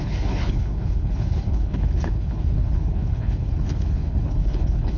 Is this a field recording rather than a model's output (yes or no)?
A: no